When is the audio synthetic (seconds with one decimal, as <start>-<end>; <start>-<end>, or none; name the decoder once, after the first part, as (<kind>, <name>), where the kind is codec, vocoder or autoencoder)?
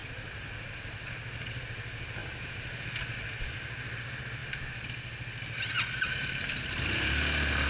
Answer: 2.2-2.8 (vocoder, BigVGAN v2)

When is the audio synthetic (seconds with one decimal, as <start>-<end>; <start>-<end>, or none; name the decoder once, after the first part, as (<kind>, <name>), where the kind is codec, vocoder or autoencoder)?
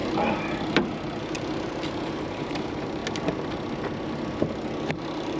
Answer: 1.7-3.0 (vocoder, BigVGAN v2); 4.9-5.4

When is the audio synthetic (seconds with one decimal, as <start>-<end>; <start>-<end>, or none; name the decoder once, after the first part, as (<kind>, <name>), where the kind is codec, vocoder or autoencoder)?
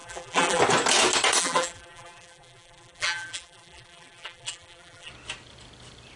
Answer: 0.0-0.6 (vocoder, BigVGAN v2); 1.4-5.1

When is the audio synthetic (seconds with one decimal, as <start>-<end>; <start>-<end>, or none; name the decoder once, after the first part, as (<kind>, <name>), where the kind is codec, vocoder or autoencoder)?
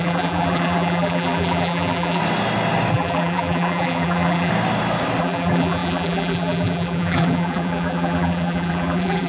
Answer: 0.0-2.2 (vocoder, BigVGAN v2); 2.9-4.5; 5.2-9.3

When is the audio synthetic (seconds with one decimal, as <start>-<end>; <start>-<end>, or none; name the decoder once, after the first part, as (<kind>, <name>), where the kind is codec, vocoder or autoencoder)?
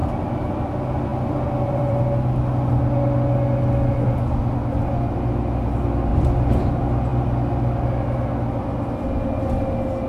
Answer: 0.0-0.7 (vocoder, BigVGAN v2); 1.1-2.0; 6.1-6.6; 7.1-7.7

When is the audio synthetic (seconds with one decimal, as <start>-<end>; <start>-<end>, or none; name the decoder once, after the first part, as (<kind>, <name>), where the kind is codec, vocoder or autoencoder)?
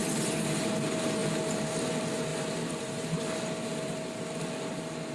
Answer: 0.0-0.7 (vocoder, BigVGAN v2); 2.3-3.2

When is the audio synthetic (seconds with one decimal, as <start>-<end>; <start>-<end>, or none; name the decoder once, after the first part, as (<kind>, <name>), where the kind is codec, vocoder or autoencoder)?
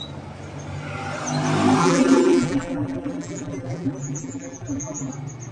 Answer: 1.8-5.1 (vocoder, BigVGAN v2)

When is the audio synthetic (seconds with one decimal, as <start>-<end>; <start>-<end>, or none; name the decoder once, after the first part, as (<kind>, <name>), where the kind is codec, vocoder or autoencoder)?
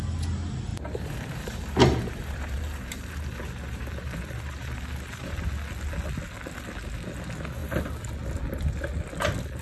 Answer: 0.7-5.3 (vocoder, BigVGAN v2)